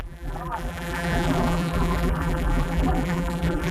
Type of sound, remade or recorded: remade